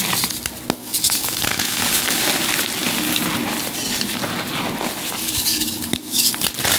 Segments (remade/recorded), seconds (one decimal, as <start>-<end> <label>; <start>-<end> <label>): 0.0-0.8 recorded; 0.8-2.2 remade; 2.2-5.2 recorded; 5.2-6.3 remade; 6.3-6.8 recorded